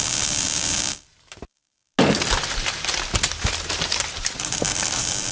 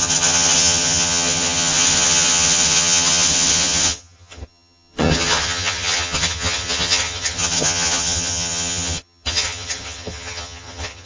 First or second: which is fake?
second